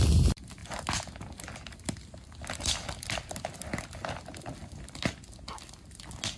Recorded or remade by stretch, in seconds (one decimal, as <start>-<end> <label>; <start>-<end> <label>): 0.0-6.4 recorded